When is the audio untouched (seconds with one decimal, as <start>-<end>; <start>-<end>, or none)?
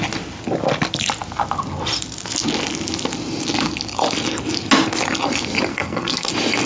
0.0-5.7; 6.3-6.7